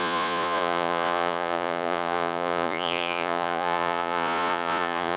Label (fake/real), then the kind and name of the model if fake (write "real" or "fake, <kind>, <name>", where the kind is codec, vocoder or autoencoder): fake, vocoder, Vocos